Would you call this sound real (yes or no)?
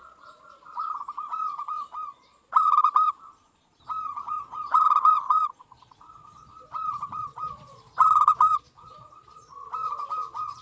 no